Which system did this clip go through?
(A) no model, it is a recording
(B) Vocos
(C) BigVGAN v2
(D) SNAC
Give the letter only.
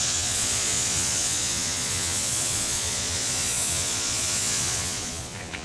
B